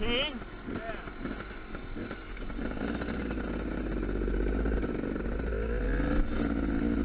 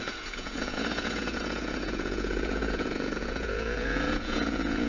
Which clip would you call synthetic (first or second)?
second